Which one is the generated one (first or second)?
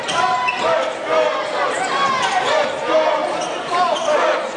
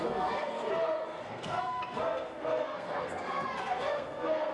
second